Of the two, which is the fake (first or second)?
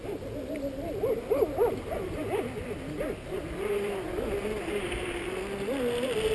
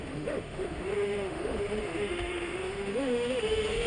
second